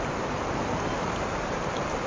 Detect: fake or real fake